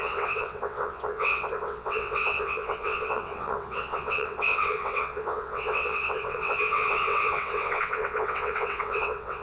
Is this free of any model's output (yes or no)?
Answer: no